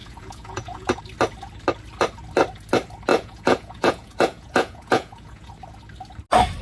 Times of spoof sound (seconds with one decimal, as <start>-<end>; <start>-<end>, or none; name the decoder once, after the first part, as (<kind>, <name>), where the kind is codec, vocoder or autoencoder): 0.0-1.0 (vocoder, Vocos); 3.1-5.5